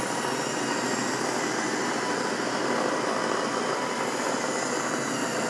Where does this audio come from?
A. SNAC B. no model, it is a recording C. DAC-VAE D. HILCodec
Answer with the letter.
B